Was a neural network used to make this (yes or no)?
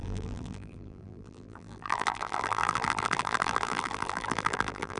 yes